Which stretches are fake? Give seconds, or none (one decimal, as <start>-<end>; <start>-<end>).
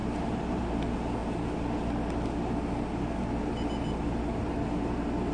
0.0-0.6